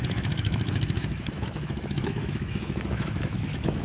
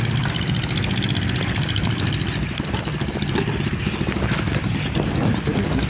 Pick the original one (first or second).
second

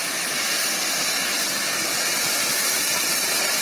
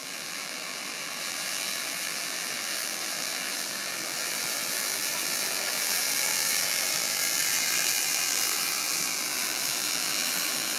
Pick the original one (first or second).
first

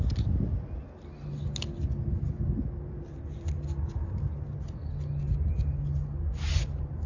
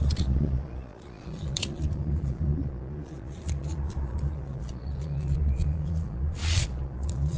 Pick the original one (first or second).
first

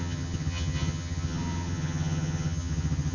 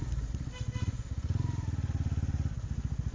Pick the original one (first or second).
second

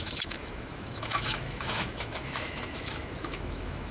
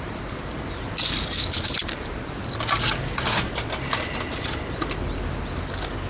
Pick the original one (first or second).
second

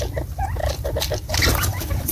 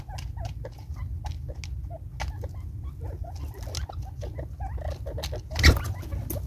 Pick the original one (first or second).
second